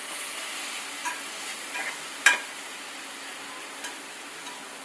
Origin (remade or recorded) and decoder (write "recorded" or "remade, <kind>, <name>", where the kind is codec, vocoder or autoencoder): recorded